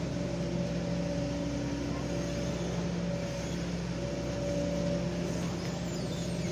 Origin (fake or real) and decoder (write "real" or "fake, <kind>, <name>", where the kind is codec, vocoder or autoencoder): real